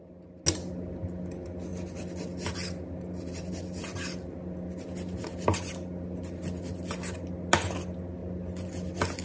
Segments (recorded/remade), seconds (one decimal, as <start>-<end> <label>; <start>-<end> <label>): 0.0-9.2 recorded